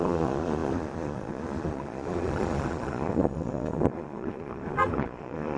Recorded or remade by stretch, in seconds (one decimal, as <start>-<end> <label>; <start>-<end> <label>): 0.0-5.6 remade